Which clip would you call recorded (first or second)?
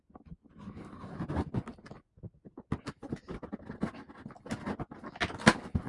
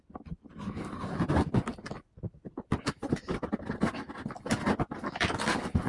first